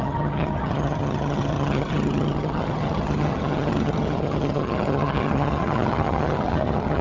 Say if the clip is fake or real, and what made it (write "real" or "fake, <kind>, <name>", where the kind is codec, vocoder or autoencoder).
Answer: fake, vocoder, HiFi-GAN